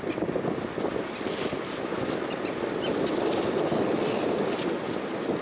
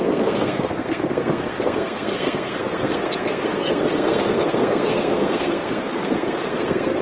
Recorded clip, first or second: first